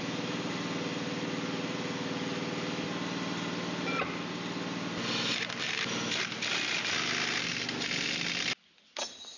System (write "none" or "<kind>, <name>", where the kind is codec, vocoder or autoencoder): none